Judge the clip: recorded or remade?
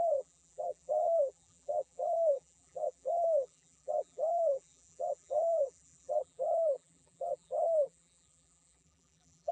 remade